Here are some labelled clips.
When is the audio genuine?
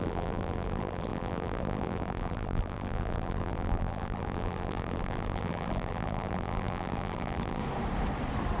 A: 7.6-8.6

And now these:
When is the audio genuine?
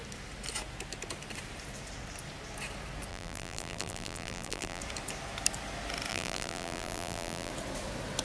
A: 0.0-3.1; 4.8-6.1; 7.5-8.2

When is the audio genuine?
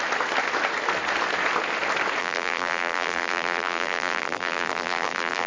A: 0.0-2.2